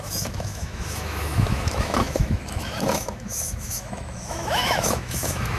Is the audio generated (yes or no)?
yes